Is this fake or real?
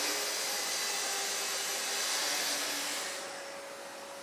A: real